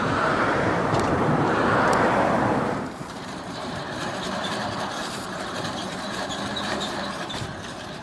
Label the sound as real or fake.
fake